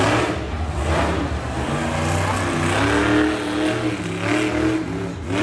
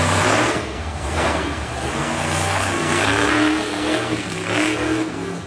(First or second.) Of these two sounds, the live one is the first